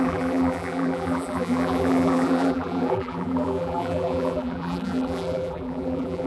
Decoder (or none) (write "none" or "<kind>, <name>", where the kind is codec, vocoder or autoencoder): vocoder, BigVGAN v2